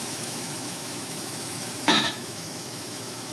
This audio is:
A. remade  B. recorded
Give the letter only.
A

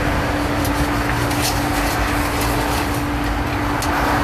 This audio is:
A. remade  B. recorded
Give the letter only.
B